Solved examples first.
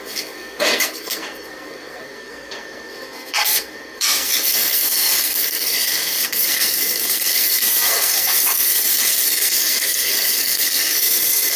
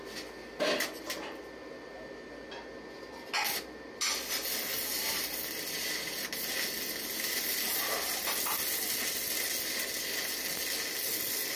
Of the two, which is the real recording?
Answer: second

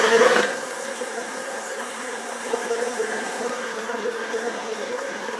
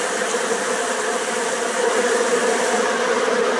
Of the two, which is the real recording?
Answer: second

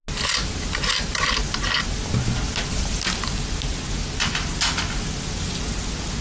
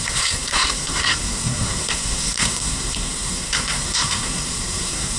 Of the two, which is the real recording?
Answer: first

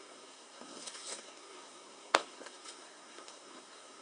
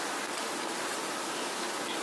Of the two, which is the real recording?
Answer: second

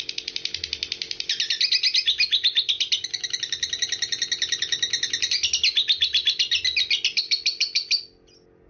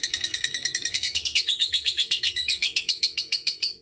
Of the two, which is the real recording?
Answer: first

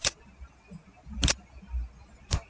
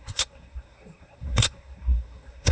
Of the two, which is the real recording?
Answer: first